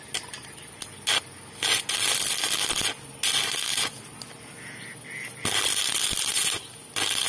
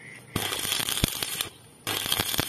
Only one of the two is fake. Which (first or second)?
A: second